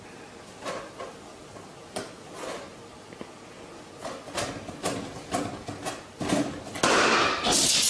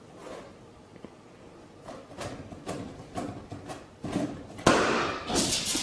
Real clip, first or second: first